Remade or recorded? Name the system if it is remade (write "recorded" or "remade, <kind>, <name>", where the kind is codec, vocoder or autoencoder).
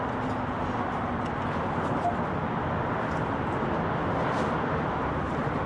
recorded